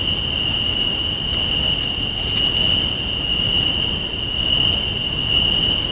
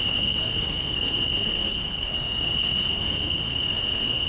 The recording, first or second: first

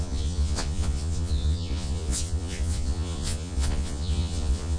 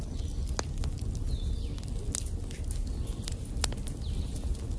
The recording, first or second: second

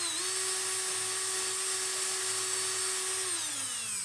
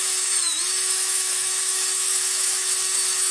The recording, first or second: first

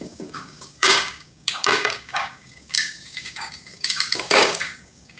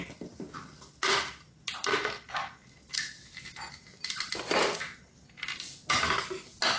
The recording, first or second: second